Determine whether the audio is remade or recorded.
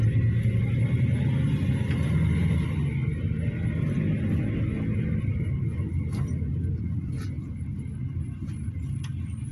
recorded